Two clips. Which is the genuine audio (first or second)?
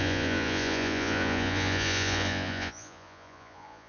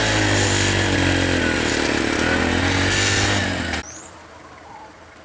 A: second